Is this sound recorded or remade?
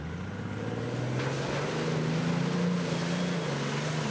recorded